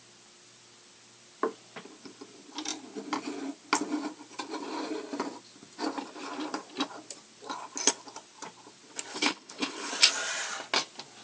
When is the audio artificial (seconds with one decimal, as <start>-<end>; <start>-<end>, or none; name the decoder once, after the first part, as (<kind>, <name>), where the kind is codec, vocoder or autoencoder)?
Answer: 9.1-9.9 (codec, HILCodec)